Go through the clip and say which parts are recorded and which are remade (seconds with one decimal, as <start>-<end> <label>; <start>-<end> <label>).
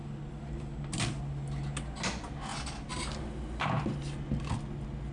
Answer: 0.0-5.1 recorded